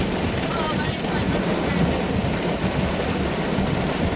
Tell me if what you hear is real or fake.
real